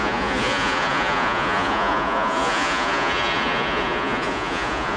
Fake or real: fake